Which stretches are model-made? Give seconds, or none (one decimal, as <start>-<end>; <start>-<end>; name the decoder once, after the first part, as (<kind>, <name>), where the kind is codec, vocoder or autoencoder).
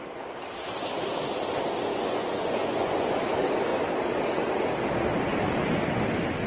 1.9-3.1 (vocoder, Vocos)